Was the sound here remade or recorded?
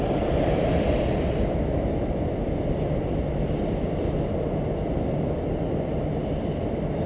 recorded